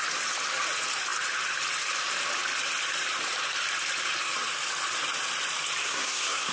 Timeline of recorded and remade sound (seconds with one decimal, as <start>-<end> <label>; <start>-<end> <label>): 0.0-5.8 recorded; 5.8-6.5 remade